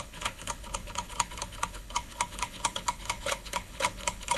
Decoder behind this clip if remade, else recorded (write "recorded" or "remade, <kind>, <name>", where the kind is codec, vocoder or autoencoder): remade, codec, HILCodec